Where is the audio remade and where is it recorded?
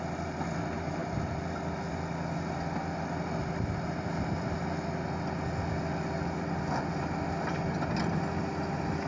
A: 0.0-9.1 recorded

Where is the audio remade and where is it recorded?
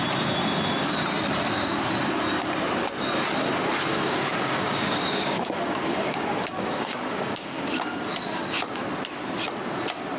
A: 0.0-3.9 recorded; 3.9-7.7 remade; 7.7-10.2 recorded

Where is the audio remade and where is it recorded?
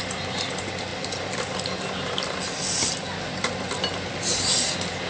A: 0.0-5.1 recorded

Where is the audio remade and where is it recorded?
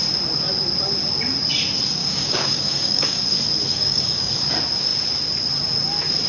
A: 0.0-2.0 recorded; 2.0-3.2 remade; 3.2-3.7 recorded; 3.7-4.3 remade; 4.3-6.3 recorded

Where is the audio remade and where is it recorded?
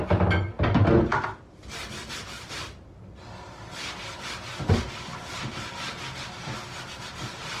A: 0.0-7.6 recorded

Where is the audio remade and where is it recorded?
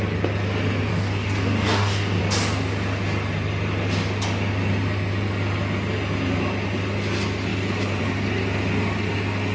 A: 0.0-0.9 recorded; 0.9-2.2 remade; 2.2-9.5 recorded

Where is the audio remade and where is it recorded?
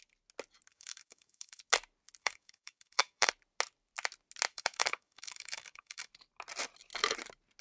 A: 0.0-0.7 recorded; 0.7-1.6 remade; 1.6-2.2 recorded; 2.2-3.3 remade; 3.3-4.5 recorded; 4.5-6.1 remade; 6.1-7.6 recorded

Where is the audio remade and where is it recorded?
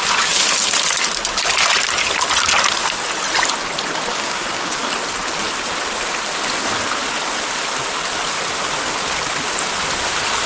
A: 0.0-4.1 recorded; 4.1-4.8 remade; 4.8-10.5 recorded